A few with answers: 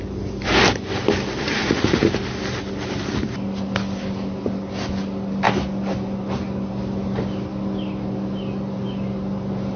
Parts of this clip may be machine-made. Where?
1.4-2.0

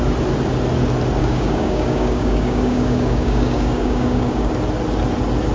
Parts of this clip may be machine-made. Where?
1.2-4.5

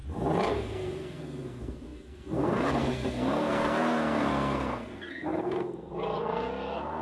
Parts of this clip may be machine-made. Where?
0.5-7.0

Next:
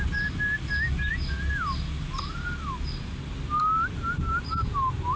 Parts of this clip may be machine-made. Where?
none

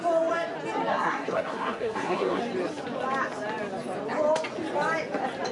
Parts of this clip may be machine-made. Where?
0.9-2.4

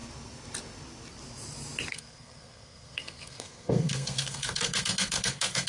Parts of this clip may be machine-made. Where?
1.9-5.7